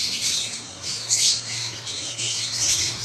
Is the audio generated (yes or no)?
yes